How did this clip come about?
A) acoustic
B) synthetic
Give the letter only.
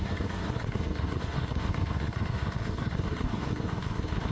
B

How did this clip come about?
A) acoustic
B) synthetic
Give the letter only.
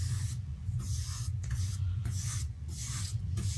B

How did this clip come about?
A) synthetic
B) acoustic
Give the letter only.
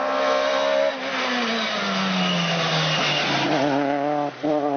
B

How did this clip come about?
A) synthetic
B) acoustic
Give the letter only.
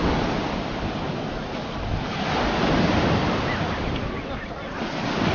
B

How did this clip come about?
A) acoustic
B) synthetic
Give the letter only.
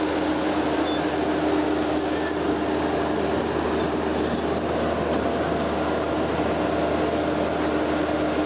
A